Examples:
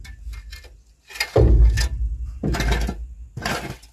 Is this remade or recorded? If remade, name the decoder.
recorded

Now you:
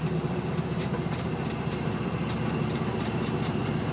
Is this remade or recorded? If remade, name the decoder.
remade, vocoder, BigVGAN v2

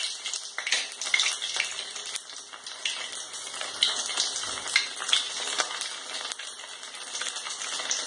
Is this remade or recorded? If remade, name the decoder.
recorded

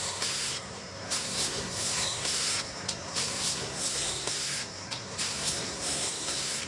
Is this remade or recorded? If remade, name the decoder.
remade, codec, SNAC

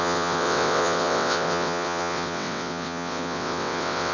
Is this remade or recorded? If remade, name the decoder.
remade, vocoder, WaveNeXt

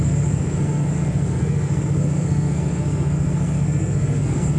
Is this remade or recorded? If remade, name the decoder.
remade, codec, SNAC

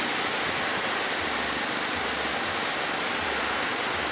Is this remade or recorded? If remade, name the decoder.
recorded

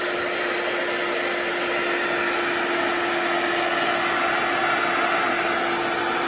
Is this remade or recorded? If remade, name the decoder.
recorded